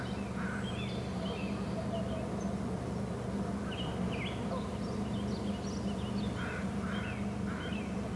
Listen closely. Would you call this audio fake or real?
real